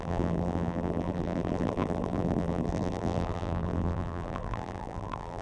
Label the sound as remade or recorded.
remade